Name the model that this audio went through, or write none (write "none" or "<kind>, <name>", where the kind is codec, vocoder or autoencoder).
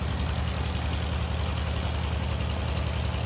none